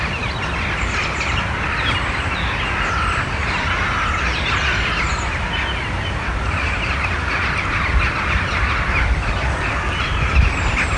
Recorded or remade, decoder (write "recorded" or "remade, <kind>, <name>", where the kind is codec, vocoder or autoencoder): recorded